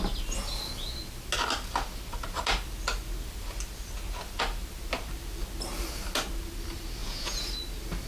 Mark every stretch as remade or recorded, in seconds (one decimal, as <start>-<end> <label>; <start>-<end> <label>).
0.0-7.0 recorded; 7.0-7.5 remade; 7.5-8.1 recorded

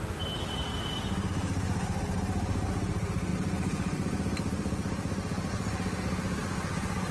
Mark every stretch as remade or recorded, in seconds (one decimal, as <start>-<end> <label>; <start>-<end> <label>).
0.0-7.1 recorded

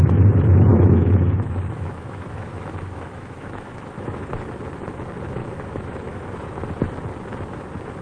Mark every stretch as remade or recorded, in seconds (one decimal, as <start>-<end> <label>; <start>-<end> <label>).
0.0-0.7 recorded; 0.7-4.3 remade; 4.3-5.4 recorded; 5.4-6.6 remade; 6.6-8.0 recorded

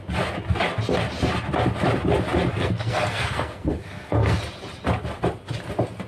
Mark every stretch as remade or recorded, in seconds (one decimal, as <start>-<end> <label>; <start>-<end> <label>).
0.0-2.5 recorded; 2.5-4.4 remade; 4.4-6.1 recorded

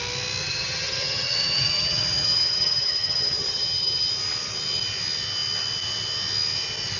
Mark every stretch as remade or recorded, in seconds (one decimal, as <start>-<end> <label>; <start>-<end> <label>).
0.0-0.4 recorded; 0.4-4.1 remade; 4.1-7.0 recorded

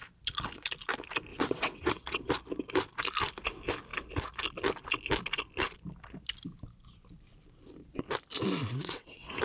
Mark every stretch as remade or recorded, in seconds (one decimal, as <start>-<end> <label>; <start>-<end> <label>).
0.0-1.3 recorded; 1.3-2.3 remade; 2.3-8.6 recorded; 8.6-9.4 remade

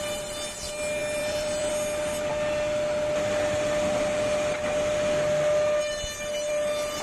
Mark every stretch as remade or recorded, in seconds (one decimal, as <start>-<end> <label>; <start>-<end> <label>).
0.0-1.0 recorded; 1.0-1.7 remade; 1.7-7.0 recorded